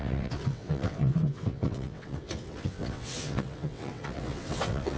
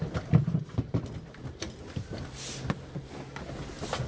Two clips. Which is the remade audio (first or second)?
first